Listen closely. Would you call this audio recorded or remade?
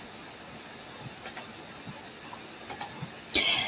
recorded